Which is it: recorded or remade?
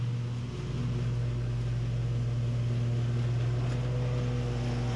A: recorded